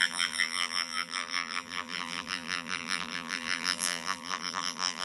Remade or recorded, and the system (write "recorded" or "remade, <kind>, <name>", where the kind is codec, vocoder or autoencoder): remade, vocoder, BigVGAN v2